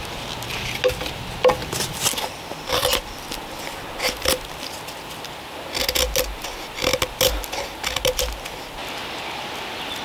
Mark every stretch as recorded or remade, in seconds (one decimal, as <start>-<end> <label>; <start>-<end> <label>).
0.0-10.0 recorded